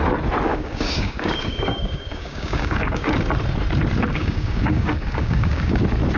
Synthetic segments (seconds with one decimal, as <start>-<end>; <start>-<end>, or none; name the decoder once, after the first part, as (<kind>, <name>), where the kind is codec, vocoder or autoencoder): 0.5-3.1 (codec, DAC); 4.1-5.8